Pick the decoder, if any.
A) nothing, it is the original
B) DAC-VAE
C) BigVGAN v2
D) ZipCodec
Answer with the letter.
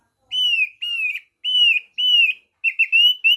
A